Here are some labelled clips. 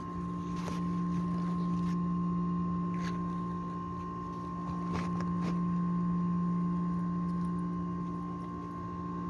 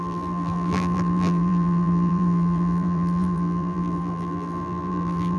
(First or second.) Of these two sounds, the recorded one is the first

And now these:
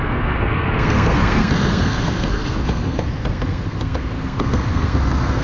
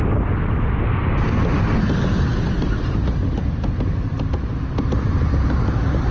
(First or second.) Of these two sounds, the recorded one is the second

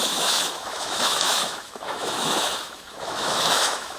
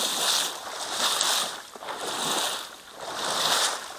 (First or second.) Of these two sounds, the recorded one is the second